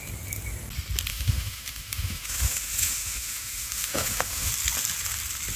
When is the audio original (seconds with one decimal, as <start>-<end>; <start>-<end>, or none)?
0.0-1.1; 4.5-5.6